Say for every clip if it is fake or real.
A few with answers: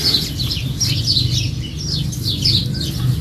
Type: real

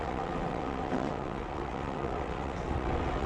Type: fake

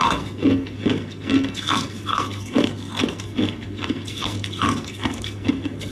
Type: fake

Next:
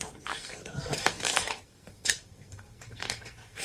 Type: fake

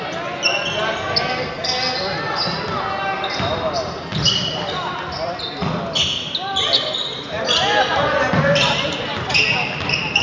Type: real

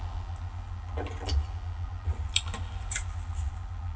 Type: real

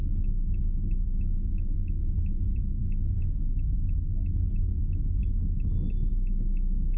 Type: fake